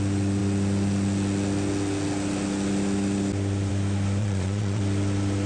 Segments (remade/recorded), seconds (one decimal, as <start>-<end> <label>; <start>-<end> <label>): 0.0-4.2 recorded; 4.2-4.8 remade; 4.8-5.5 recorded